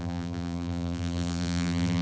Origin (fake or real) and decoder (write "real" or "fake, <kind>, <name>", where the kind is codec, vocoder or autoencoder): fake, vocoder, BigVGAN v2